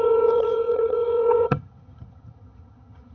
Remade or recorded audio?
remade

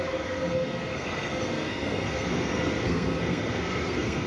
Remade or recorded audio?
remade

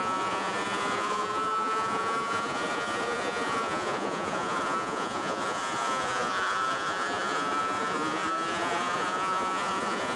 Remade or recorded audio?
remade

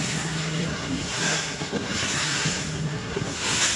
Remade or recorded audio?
remade